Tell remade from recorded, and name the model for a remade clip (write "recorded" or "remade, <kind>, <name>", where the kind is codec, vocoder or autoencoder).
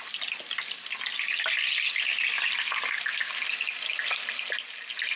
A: recorded